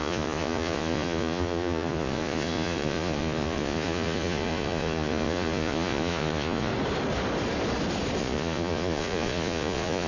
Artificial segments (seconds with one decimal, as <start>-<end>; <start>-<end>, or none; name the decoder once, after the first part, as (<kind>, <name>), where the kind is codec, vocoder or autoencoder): 0.0-6.7 (vocoder, Vocos); 8.2-10.1